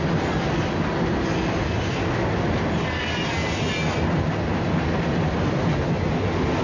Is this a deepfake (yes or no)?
no